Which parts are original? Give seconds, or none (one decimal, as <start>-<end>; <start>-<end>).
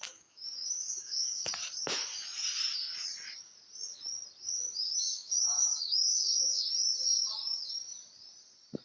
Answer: 1.5-5.1; 6.7-8.8